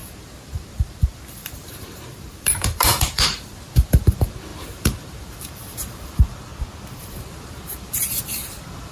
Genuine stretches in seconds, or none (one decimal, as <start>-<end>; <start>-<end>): 6.5-7.0